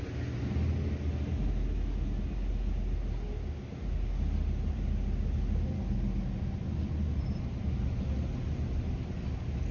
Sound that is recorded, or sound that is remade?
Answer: recorded